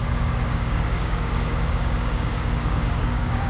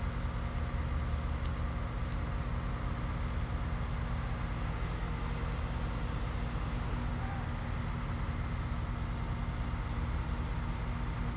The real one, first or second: second